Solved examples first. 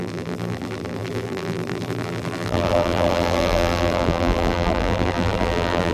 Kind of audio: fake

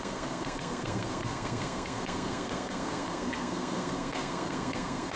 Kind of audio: fake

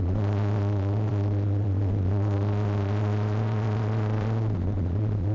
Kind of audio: fake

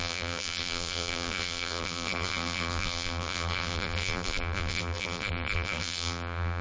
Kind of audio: fake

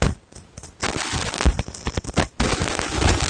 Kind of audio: real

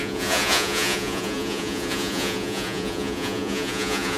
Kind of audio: fake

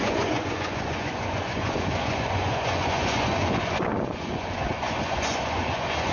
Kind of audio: fake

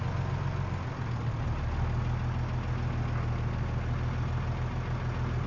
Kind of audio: real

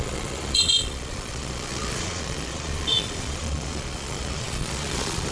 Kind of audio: fake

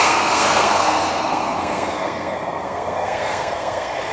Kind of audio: fake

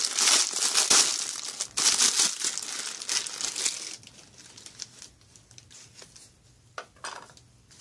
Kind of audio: real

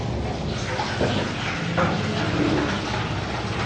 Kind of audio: real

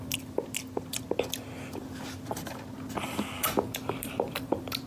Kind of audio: real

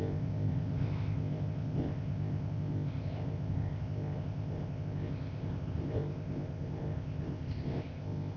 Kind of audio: fake